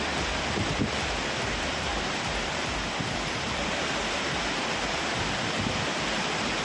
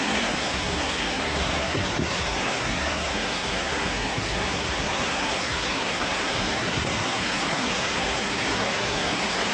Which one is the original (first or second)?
first